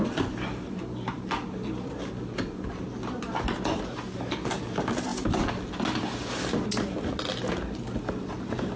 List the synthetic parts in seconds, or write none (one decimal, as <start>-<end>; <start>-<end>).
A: none